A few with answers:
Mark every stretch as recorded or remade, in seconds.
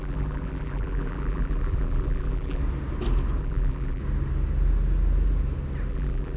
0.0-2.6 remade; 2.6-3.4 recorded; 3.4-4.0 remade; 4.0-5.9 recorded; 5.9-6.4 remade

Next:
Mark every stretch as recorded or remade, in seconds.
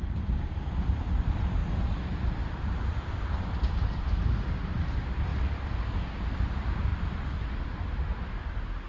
0.0-1.6 remade; 1.6-3.3 recorded; 3.3-5.3 remade; 5.3-5.9 recorded; 5.9-8.9 remade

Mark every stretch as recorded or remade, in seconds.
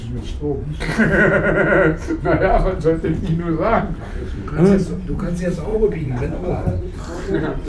0.0-5.7 recorded; 5.7-7.7 remade